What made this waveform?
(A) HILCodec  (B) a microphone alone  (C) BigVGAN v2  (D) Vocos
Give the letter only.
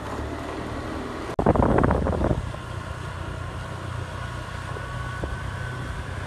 B